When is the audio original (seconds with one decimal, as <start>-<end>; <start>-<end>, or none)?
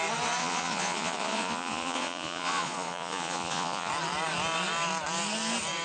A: 0.0-0.4; 3.9-5.8